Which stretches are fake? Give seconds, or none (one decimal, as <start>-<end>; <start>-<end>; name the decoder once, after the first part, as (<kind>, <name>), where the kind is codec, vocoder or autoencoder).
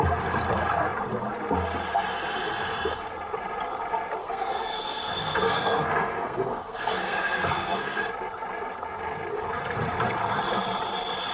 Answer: 4.2-8.0 (codec, SNAC)